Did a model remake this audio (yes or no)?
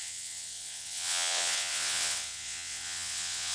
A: yes